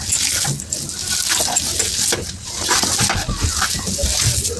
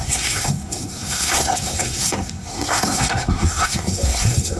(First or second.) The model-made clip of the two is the second